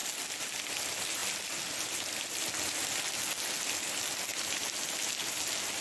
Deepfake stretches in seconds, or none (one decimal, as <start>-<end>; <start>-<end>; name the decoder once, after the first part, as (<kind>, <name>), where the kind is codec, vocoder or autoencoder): none